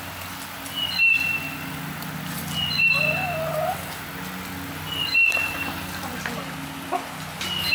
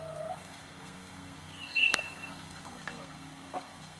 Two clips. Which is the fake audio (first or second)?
second